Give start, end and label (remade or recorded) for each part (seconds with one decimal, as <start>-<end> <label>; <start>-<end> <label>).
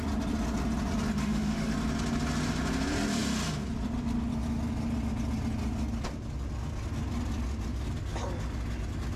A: 0.0-1.2 recorded; 1.2-1.7 remade; 1.7-9.2 recorded